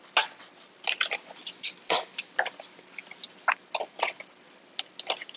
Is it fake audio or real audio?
real